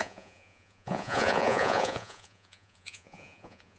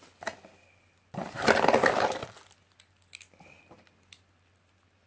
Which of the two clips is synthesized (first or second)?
first